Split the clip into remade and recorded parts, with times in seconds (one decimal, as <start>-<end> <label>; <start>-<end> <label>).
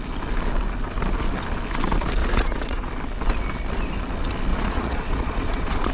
0.0-2.2 recorded; 2.2-2.9 remade; 2.9-4.5 recorded; 4.5-5.9 remade